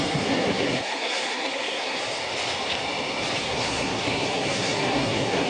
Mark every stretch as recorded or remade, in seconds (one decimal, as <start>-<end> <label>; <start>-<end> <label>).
0.0-2.0 remade; 2.0-3.4 recorded; 3.4-5.5 remade